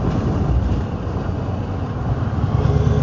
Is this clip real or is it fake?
real